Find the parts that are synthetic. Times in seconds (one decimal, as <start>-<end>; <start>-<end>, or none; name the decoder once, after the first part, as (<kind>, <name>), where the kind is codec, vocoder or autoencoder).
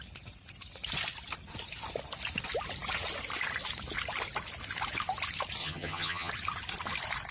5.6-6.3 (vocoder, HiFi-GAN)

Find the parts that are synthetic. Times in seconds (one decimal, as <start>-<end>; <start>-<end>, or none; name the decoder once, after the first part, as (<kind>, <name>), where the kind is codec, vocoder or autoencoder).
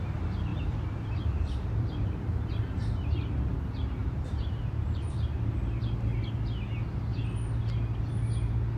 0.5-2.5 (vocoder, BigVGAN v2); 4.0-5.1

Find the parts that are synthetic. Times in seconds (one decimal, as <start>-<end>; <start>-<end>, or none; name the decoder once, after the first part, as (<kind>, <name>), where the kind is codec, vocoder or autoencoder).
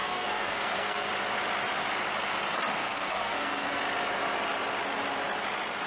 0.0-1.1 (codec, SNAC); 2.8-3.8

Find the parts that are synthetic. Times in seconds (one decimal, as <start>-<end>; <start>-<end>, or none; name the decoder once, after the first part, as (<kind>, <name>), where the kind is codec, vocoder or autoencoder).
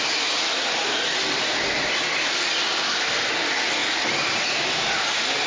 3.8-4.3 (vocoder, BigVGAN v2)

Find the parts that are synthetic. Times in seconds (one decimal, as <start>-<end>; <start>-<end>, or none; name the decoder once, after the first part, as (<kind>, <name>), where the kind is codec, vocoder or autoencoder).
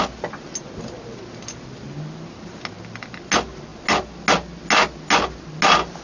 none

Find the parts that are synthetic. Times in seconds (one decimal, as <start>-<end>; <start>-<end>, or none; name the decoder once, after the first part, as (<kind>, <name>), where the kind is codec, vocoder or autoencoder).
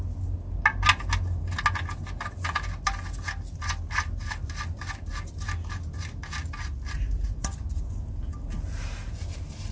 none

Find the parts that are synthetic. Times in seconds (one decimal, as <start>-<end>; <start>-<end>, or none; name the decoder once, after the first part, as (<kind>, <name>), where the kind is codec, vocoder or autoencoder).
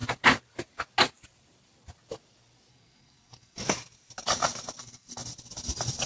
2.7-3.6 (codec, SNAC); 4.8-5.2